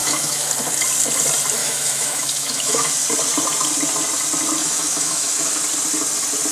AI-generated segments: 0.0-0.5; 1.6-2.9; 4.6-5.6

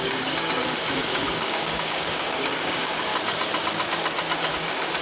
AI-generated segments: 0.0-3.1; 4.5-5.0

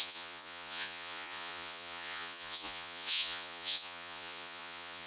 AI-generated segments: 0.0-5.1

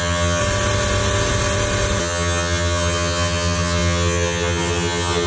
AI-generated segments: 0.0-0.4; 2.0-5.3

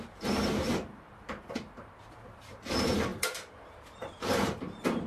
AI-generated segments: 0.0-5.1

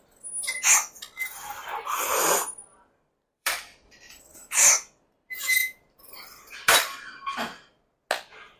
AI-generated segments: 2.7-3.6; 5.6-6.8